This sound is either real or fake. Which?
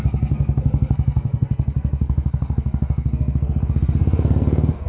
fake